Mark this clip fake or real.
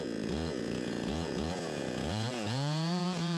fake